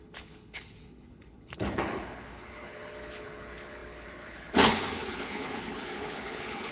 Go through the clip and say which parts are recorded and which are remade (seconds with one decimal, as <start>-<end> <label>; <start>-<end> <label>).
0.0-6.7 remade